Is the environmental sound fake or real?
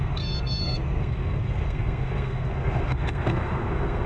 fake